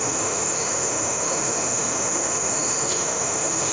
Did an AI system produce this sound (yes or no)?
yes